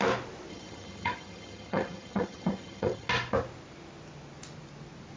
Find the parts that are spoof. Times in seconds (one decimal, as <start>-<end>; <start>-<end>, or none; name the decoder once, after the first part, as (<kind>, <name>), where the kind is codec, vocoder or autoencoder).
0.5-3.1 (vocoder, HiFi-GAN)

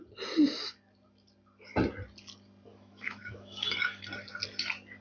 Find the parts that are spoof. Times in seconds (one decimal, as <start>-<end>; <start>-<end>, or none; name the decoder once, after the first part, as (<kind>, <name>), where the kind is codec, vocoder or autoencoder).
2.7-4.0 (autoencoder, DAC-VAE)

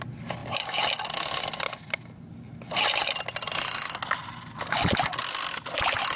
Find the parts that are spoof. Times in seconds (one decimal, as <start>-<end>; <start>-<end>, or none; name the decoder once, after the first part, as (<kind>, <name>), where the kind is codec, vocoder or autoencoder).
none

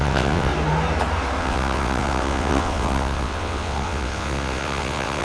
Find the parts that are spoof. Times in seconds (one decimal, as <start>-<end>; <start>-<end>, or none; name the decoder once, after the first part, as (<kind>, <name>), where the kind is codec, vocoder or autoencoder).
0.0-0.5 (vocoder, WaveNeXt); 1.4-5.2

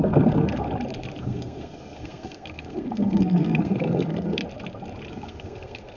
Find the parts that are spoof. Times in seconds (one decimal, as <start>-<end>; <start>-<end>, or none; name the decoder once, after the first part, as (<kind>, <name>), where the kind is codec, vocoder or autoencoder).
0.0-0.7 (codec, SNAC); 1.2-4.4; 5.1-6.0

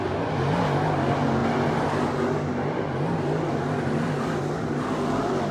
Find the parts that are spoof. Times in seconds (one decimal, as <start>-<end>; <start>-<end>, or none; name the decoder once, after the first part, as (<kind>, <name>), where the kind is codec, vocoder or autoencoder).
none

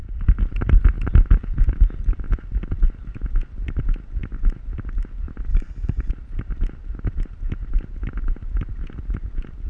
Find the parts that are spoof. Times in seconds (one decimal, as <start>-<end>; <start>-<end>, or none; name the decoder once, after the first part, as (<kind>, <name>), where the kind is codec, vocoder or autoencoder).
5.5-6.1 (codec, DAC)

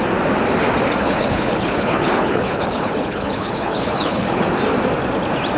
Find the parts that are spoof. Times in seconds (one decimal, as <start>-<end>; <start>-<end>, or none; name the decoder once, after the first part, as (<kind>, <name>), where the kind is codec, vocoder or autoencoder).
1.0-4.4 (codec, HILCodec)